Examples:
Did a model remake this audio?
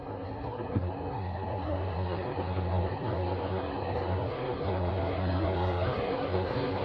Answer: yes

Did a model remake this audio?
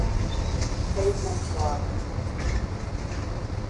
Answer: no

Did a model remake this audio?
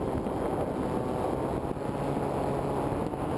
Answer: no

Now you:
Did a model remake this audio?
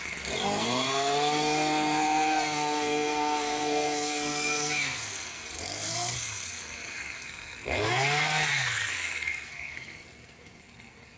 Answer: yes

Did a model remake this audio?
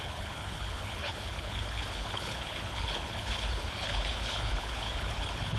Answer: yes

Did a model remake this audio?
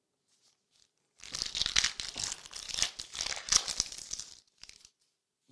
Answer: no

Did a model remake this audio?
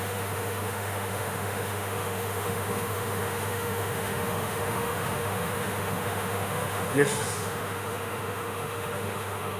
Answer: yes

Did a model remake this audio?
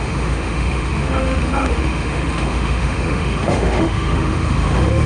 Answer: yes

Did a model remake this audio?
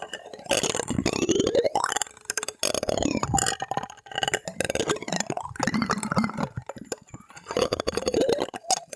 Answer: no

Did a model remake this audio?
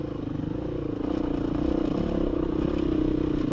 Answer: no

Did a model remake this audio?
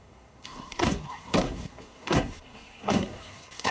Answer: yes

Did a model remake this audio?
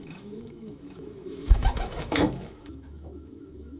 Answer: yes